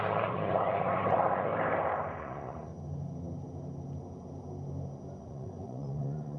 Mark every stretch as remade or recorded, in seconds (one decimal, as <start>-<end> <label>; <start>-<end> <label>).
0.0-1.5 remade; 1.5-2.2 recorded; 2.2-2.7 remade; 2.7-5.2 recorded; 5.2-6.4 remade